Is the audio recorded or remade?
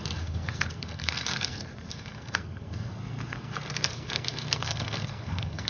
remade